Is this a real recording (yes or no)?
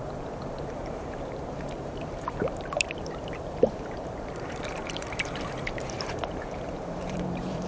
no